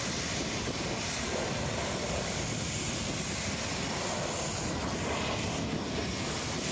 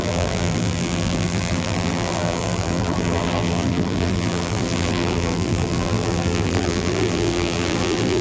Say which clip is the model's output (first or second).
second